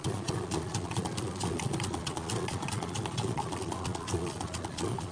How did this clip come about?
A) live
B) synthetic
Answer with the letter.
B